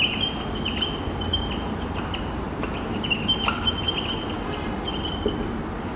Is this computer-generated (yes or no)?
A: no